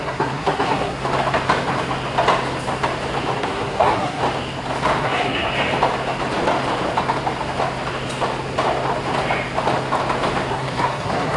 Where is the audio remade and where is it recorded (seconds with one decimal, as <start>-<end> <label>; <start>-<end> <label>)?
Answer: 0.0-1.0 remade; 1.0-3.4 recorded; 3.4-4.2 remade; 4.2-5.0 recorded; 5.0-5.5 remade; 5.5-10.5 recorded; 10.5-11.4 remade